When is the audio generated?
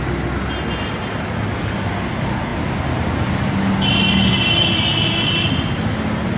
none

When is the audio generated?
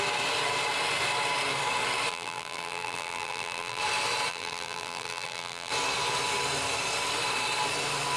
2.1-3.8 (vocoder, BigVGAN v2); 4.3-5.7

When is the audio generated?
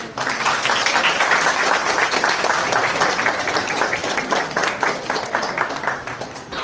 0.0-6.6 (vocoder, BigVGAN v2)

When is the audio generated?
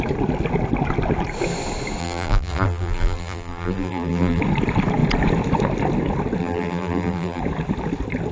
2.0-4.4 (vocoder, BigVGAN v2); 6.4-7.4